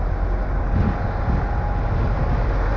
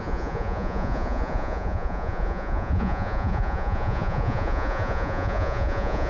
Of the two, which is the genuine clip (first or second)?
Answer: first